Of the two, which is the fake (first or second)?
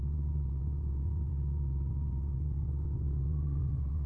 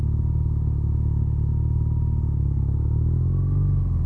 first